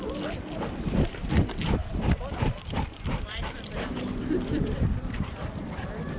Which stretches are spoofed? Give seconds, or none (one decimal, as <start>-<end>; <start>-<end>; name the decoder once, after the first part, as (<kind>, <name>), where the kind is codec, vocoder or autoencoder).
1.8-5.5 (vocoder, BigVGAN v2)